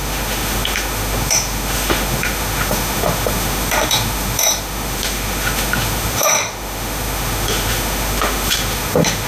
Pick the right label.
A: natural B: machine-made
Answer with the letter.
B